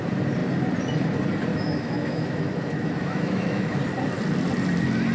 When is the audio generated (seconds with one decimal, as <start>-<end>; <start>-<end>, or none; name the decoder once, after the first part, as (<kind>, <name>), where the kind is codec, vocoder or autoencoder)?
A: 1.5-3.8 (autoencoder, DAC-VAE)